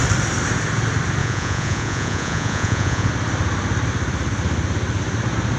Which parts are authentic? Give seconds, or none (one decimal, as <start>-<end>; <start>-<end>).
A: 0.0-1.2; 3.1-5.6